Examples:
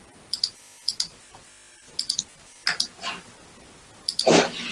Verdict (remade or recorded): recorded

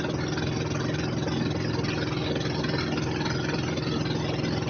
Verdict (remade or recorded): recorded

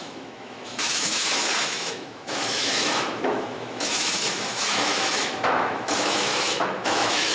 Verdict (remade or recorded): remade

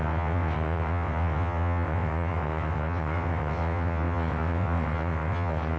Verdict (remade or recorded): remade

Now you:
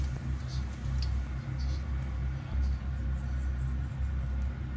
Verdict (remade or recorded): recorded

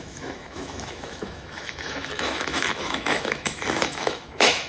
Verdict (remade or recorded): remade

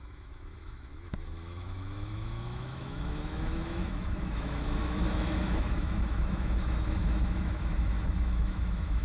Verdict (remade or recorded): remade